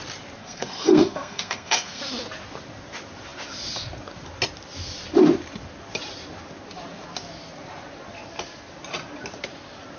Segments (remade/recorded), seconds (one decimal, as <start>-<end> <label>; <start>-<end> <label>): 0.0-0.4 recorded; 0.4-2.0 remade; 2.0-10.0 recorded